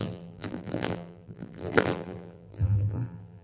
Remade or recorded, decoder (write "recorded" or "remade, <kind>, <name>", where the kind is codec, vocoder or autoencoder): remade, vocoder, BigVGAN v2